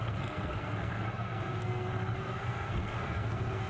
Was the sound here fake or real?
fake